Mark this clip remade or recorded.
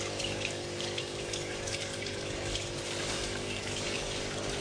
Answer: remade